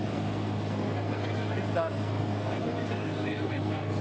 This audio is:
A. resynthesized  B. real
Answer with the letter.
A